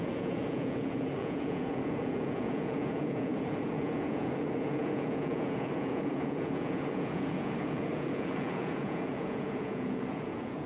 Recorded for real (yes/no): no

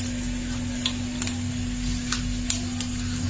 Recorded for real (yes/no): yes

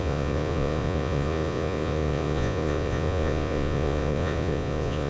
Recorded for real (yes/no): no